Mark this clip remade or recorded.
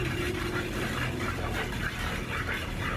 remade